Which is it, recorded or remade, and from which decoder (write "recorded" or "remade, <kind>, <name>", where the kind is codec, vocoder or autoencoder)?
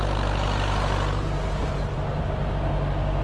recorded